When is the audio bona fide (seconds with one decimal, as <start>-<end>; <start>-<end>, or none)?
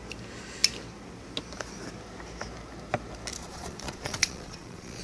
0.0-3.4